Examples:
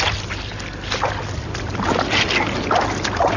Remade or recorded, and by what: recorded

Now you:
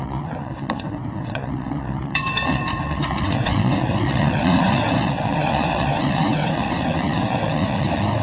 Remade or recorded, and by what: remade, vocoder, WaveNeXt